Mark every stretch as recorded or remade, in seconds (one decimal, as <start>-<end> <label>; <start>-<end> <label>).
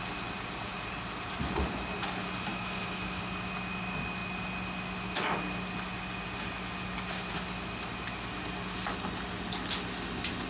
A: 0.0-2.5 recorded; 2.5-3.2 remade; 3.2-10.5 recorded